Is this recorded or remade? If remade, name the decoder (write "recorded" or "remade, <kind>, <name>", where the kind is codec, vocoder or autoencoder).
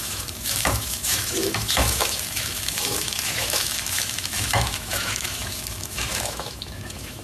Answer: remade, autoencoder, DAC-VAE